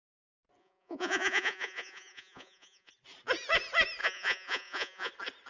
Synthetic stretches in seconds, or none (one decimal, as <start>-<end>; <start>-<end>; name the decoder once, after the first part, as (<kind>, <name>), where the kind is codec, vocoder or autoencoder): 0.6-2.9 (vocoder, Vocos); 4.0-5.1